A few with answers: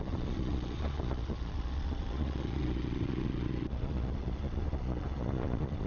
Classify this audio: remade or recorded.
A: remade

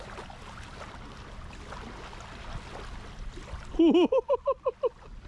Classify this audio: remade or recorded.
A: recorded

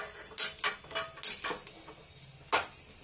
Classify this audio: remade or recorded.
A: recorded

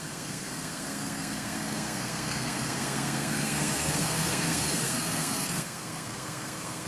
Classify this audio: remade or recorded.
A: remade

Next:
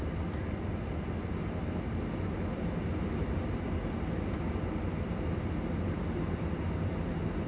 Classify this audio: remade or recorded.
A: recorded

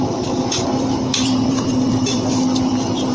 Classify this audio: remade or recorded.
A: remade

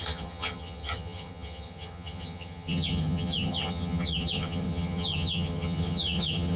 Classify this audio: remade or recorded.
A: remade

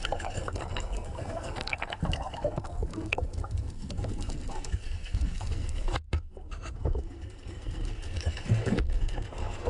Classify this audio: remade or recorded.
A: remade